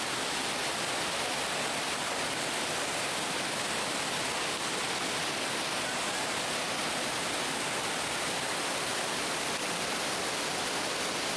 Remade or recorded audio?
recorded